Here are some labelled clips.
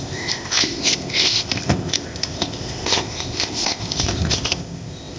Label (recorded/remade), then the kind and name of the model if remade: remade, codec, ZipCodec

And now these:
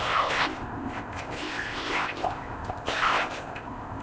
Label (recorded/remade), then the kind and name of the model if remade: remade, codec, ZipCodec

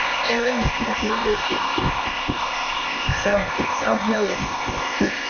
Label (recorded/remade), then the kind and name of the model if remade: remade, codec, ZipCodec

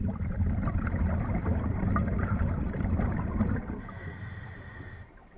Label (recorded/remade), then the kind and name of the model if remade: recorded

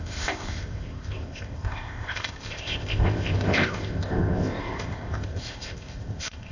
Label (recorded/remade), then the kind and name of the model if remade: remade, codec, ZipCodec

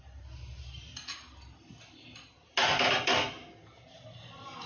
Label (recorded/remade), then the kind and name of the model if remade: recorded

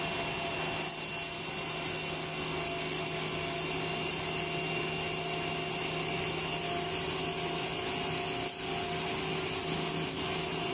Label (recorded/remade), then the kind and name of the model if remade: recorded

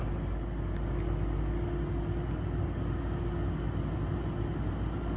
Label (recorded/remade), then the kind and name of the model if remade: recorded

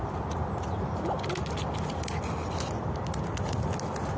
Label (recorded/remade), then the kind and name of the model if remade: recorded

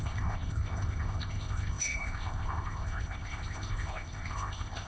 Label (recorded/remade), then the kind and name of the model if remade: remade, codec, ZipCodec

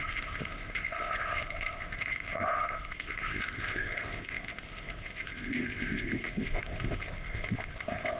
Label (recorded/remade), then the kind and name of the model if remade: remade, codec, ZipCodec